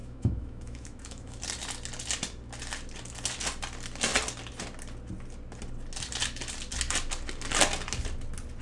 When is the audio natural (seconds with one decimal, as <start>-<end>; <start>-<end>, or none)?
1.4-8.6